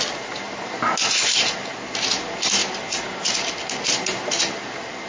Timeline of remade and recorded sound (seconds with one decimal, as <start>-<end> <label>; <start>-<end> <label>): 0.0-5.1 recorded